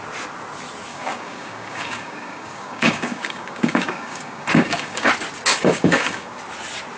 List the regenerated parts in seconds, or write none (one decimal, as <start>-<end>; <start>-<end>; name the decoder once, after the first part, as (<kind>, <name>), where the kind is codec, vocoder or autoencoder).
0.9-5.1 (codec, DAC); 5.5-6.4